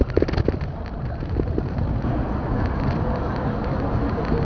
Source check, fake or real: real